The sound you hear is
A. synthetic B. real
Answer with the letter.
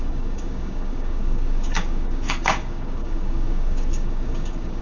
A